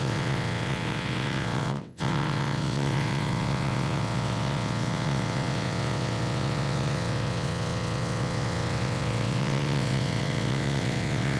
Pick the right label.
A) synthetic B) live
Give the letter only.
A